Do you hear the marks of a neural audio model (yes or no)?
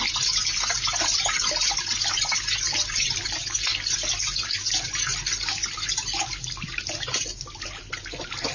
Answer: no